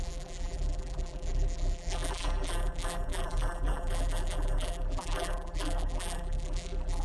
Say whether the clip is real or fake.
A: fake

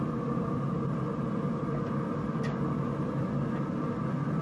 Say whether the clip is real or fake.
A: real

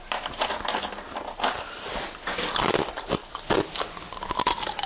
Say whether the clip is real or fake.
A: real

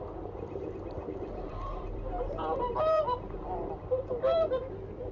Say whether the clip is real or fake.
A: fake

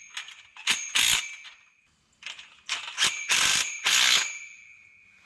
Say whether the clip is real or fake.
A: real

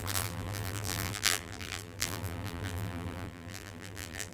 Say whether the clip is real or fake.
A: fake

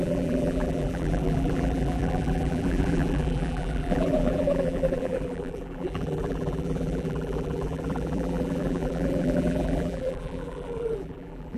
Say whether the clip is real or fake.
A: fake